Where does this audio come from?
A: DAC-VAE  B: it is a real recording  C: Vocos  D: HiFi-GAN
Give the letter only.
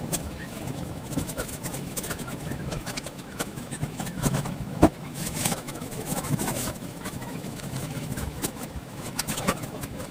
A